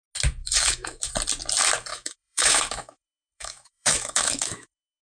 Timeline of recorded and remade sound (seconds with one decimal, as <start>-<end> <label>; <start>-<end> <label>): 0.0-0.4 recorded; 0.4-1.1 remade; 1.1-1.9 recorded; 1.9-5.0 remade